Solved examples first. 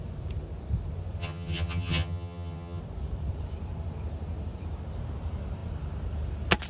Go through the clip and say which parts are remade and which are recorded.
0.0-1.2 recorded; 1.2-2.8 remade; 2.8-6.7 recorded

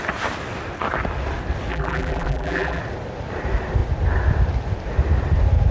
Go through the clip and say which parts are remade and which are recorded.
0.0-1.7 recorded; 1.7-2.8 remade; 2.8-5.7 recorded

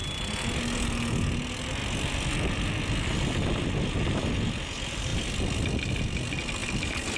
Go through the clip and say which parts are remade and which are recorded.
0.0-1.8 recorded; 1.8-4.3 remade; 4.3-5.1 recorded; 5.1-6.0 remade; 6.0-6.6 recorded; 6.6-7.2 remade

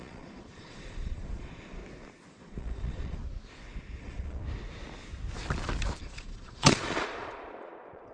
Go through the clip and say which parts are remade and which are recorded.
0.0-1.8 remade; 1.8-2.3 recorded; 2.3-3.2 remade; 3.2-4.0 recorded; 4.0-4.4 remade; 4.4-6.0 recorded; 6.0-8.1 remade